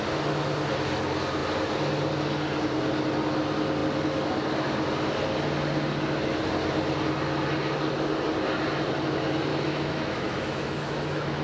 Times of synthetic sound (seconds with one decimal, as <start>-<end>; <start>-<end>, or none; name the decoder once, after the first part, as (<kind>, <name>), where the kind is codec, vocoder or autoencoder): 9.5-11.4 (autoencoder, DAC-VAE)